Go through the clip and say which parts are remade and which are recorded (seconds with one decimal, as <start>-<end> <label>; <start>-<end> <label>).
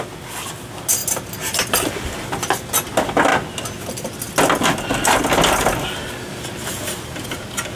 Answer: 0.0-7.8 recorded